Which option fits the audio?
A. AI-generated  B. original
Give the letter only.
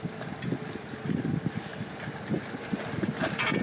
B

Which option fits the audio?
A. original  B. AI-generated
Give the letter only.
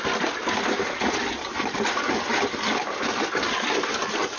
A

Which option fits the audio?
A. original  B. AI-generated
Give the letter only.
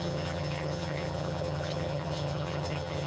B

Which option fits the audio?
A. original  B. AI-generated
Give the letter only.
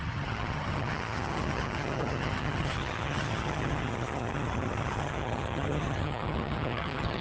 B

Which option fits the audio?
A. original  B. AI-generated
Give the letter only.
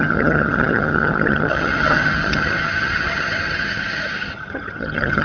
B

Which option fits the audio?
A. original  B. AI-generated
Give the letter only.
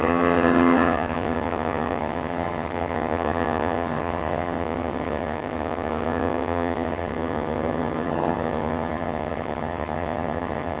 B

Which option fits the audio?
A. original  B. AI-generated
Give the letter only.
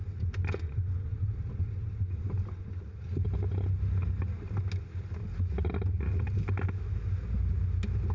A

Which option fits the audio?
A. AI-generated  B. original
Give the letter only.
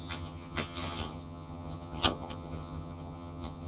A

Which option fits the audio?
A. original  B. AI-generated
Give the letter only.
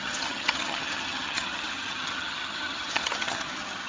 B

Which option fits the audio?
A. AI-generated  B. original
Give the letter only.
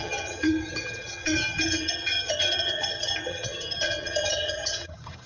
A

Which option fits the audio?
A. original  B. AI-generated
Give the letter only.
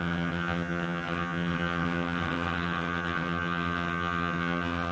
B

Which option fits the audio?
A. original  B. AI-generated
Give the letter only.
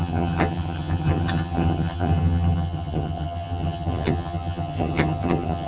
B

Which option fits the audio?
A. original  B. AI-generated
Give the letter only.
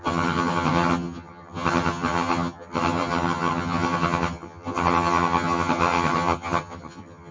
B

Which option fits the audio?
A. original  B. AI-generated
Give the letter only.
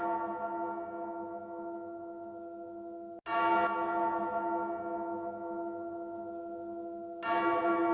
A